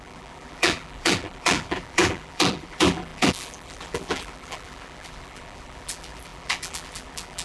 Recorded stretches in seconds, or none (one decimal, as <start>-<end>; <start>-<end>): none